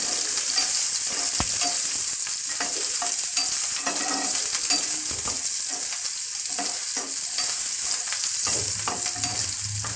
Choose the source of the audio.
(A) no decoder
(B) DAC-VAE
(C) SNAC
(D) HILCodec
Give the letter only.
A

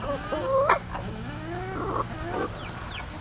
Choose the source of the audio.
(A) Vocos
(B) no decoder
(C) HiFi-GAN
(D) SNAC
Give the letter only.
B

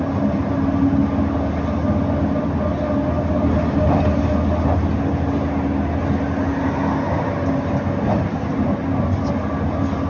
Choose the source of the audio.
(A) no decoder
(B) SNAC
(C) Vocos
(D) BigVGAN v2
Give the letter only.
A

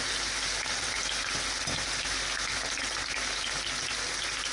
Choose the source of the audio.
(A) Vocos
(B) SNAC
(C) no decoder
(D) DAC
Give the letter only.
C